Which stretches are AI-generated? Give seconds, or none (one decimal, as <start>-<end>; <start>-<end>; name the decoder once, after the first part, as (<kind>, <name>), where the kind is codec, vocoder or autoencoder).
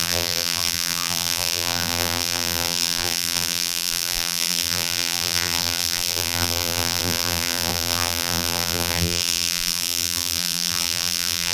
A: 0.0-11.5 (vocoder, BigVGAN v2)